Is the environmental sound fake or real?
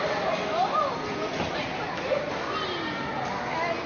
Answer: real